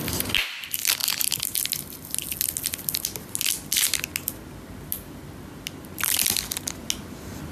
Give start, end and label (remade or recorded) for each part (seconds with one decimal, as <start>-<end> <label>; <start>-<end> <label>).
0.0-7.5 recorded